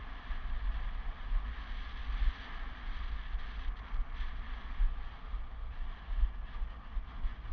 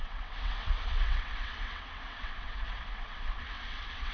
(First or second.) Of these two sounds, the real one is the first